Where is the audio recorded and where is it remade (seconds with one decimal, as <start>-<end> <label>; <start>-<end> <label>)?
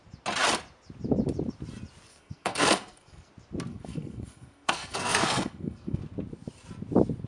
0.0-2.1 recorded; 2.1-3.3 remade; 3.3-3.7 recorded; 3.7-6.0 remade; 6.0-7.3 recorded